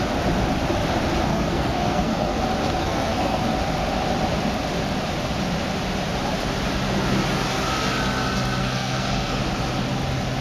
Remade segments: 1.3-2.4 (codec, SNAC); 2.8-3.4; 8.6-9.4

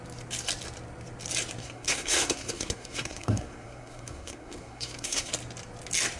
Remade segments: 1.6-5.3 (codec, SNAC)

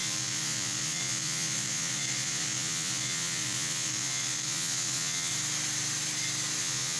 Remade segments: 0.0-5.3 (vocoder, Vocos); 6.6-7.0

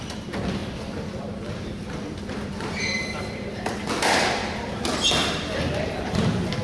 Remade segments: 0.0-0.6 (vocoder, BigVGAN v2); 1.2-1.8; 2.3-4.4; 5.6-6.6

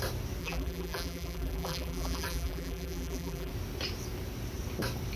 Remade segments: 0.4-3.5 (vocoder, BigVGAN v2)